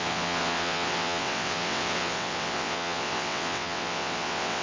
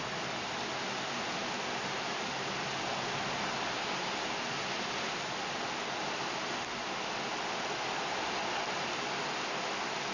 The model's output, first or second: first